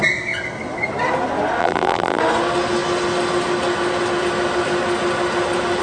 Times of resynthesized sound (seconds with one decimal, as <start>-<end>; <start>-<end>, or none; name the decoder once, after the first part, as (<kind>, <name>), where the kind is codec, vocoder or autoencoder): 1.6-2.2 (vocoder, BigVGAN v2)